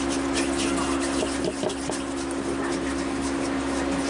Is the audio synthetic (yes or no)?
no